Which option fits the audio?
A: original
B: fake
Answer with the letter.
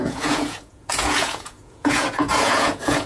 B